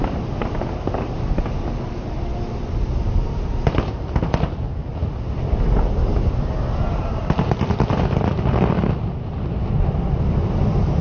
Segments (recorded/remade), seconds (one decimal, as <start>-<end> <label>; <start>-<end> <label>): 0.0-11.0 recorded